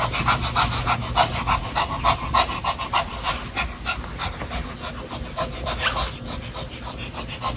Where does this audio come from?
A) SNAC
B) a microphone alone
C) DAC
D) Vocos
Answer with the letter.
B